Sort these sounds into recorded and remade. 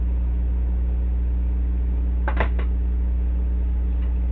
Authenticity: recorded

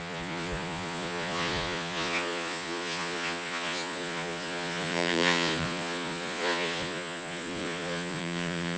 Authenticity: remade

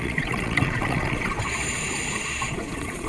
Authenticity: remade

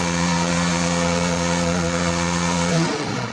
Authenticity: remade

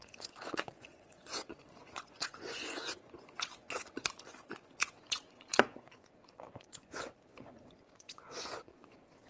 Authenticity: remade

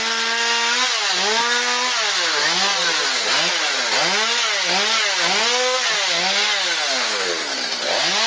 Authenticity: recorded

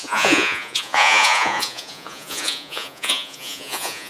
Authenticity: remade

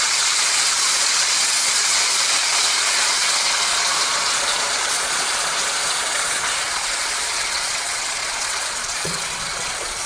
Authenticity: remade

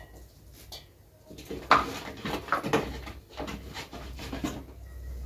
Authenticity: recorded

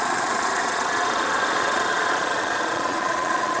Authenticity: remade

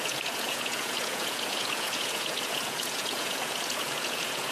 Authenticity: remade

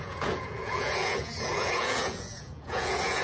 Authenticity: remade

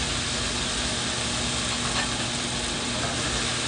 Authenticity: recorded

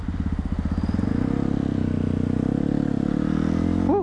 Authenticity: recorded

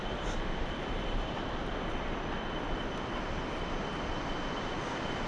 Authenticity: recorded